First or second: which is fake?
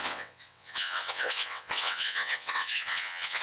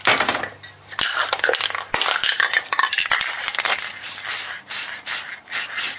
first